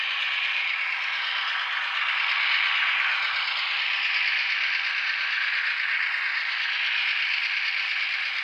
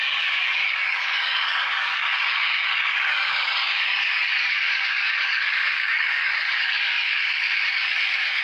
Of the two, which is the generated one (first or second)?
second